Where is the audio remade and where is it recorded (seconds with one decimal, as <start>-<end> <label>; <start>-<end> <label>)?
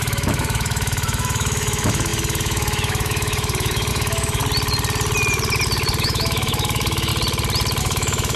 0.0-4.4 remade; 4.4-6.0 recorded; 6.0-7.1 remade; 7.1-7.8 recorded; 7.8-8.4 remade